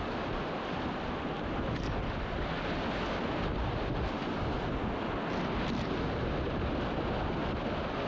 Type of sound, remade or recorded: recorded